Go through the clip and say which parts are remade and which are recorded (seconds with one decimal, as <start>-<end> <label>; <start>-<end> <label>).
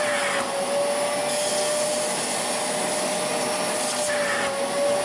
0.0-5.0 recorded